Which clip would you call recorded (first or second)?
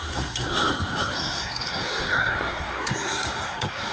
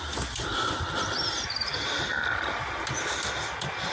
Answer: second